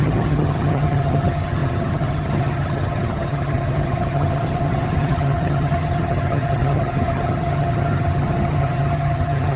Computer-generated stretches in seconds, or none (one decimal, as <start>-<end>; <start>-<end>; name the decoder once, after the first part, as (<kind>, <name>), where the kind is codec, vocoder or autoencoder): 0.0-9.6 (vocoder, HiFi-GAN)